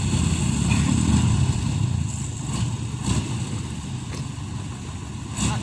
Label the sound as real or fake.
real